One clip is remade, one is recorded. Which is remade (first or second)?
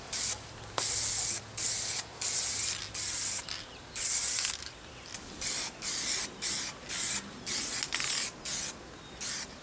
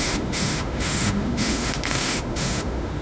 second